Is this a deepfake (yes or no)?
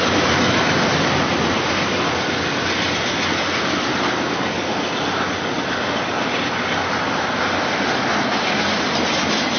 no